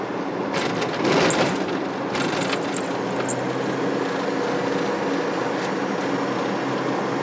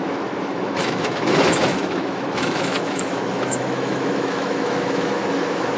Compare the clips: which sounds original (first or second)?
first